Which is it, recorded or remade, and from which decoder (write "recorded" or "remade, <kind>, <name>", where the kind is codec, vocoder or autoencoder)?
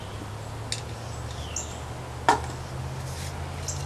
recorded